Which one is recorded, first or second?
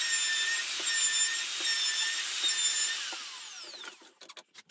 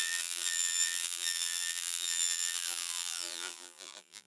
first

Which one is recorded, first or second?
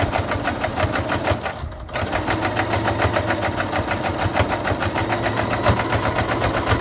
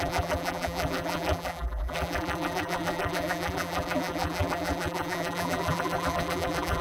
first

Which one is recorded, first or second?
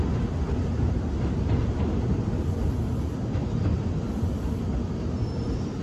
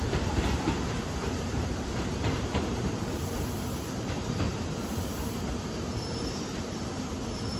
first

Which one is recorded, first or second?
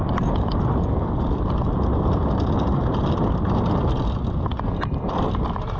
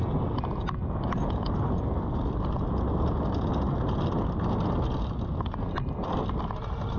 second